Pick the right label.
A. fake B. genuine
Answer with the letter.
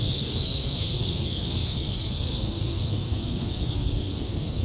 A